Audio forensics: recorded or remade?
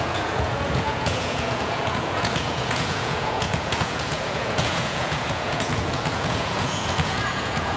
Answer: remade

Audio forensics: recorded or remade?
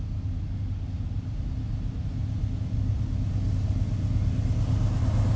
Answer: recorded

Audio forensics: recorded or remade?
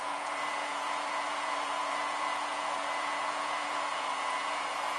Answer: remade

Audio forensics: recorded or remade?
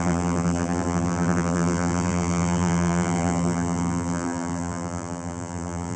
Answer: remade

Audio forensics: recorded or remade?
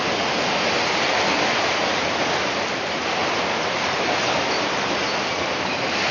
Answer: recorded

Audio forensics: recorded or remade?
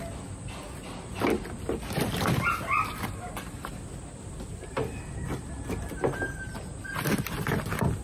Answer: recorded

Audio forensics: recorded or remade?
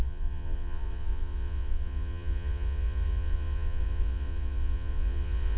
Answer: remade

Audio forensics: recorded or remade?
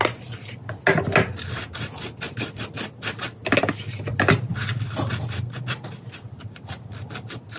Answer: recorded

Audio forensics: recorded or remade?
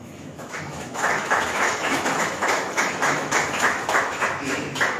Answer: remade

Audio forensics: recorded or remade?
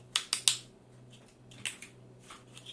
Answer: recorded